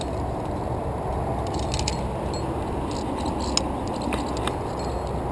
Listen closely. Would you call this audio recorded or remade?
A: recorded